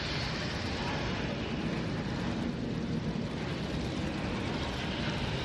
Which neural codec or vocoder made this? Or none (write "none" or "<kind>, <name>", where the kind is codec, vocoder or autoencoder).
none